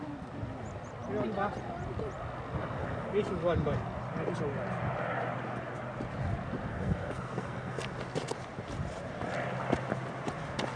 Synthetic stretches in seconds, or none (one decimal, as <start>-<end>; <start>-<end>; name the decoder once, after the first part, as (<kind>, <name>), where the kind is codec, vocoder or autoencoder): 6.7-7.9 (codec, SNAC)